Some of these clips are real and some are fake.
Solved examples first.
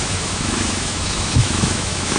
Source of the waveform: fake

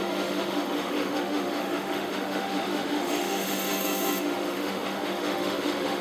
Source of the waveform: fake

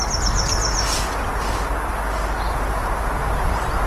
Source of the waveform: real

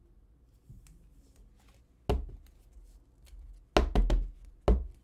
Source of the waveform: real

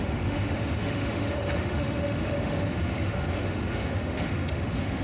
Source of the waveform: fake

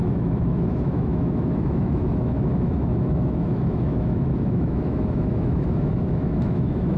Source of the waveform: fake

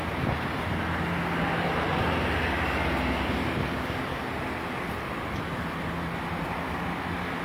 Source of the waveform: real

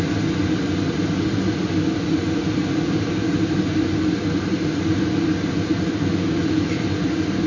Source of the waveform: real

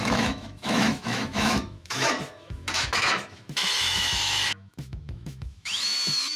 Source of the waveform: fake